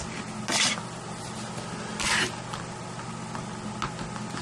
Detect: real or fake real